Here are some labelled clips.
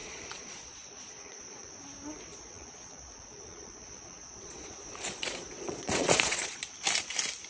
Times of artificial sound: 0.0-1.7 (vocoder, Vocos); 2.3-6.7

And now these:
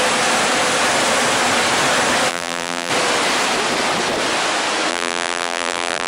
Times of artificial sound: 2.3-2.9 (vocoder, BigVGAN v2); 4.9-6.1